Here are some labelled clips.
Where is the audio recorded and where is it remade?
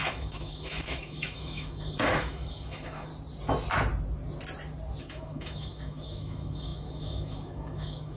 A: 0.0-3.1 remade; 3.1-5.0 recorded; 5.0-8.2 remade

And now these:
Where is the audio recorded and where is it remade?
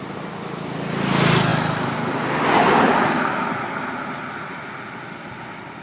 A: 0.0-5.8 recorded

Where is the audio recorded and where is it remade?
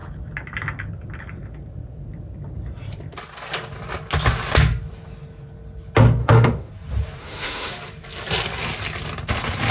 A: 0.0-6.2 recorded; 6.2-6.7 remade; 6.7-7.2 recorded; 7.2-7.7 remade; 7.7-9.7 recorded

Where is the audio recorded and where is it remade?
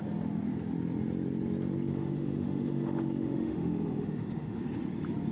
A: 0.0-1.9 recorded; 1.9-4.6 remade; 4.6-5.3 recorded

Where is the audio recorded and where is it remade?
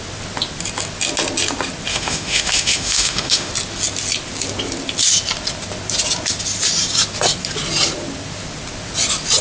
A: 0.0-1.9 recorded; 1.9-3.5 remade; 3.5-9.4 recorded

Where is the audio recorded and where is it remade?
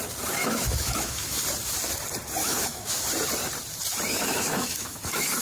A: 0.0-0.4 recorded; 0.4-1.4 remade; 1.4-2.4 recorded; 2.4-3.0 remade; 3.0-4.1 recorded; 4.1-5.4 remade